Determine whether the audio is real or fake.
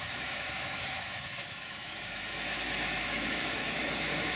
fake